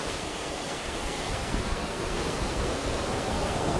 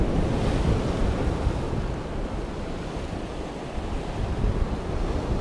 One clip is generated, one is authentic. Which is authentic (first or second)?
second